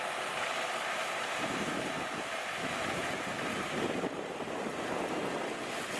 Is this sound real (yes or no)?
yes